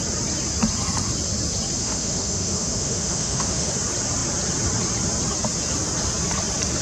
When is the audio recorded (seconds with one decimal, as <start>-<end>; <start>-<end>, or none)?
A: 0.0-1.8; 3.7-6.8